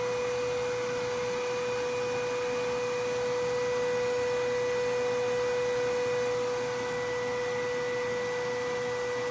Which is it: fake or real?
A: real